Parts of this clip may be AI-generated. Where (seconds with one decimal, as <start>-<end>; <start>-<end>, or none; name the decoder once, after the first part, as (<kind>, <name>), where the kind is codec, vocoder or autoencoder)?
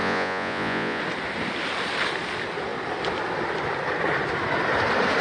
0.0-1.0 (vocoder, Vocos)